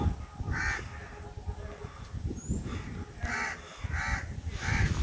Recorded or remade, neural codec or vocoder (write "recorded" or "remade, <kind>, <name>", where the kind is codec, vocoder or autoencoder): recorded